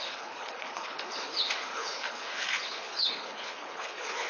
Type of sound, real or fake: fake